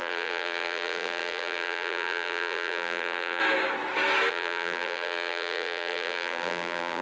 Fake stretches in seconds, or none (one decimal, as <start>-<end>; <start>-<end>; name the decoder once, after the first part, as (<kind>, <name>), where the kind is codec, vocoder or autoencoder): 0.0-3.4 (vocoder, BigVGAN v2); 4.3-7.0